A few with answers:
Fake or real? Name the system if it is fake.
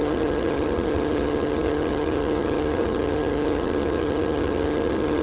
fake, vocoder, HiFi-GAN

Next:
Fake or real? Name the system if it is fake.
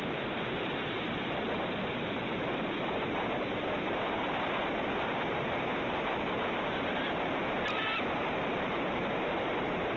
fake, vocoder, BigVGAN v2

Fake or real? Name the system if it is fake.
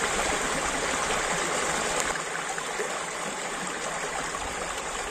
real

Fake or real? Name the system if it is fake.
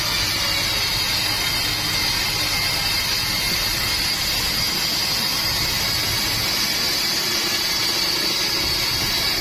real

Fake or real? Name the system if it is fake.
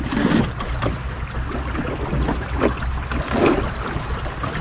real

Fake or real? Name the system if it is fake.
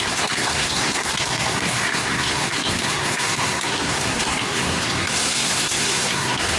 fake, codec, SNAC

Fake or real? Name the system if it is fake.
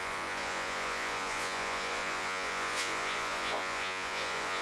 fake, vocoder, Vocos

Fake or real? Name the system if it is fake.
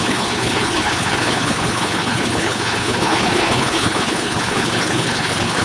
fake, codec, HILCodec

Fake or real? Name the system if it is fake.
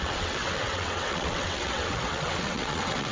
fake, vocoder, WaveNeXt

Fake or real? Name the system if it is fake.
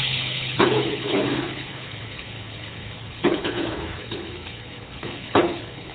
fake, codec, HILCodec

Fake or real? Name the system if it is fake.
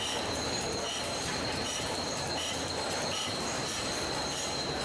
fake, vocoder, BigVGAN v2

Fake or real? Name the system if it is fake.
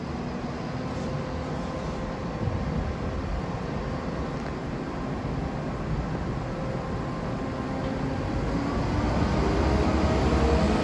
real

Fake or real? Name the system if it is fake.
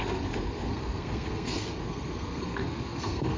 fake, codec, SNAC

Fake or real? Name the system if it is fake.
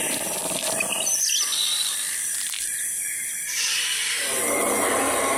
fake, vocoder, BigVGAN v2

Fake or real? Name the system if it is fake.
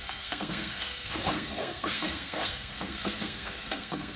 fake, codec, SNAC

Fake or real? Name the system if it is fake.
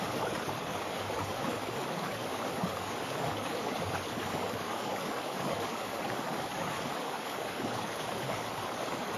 fake, codec, DAC